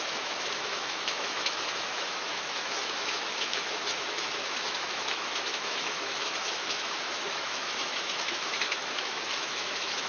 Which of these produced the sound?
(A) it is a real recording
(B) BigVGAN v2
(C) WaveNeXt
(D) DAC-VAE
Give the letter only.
D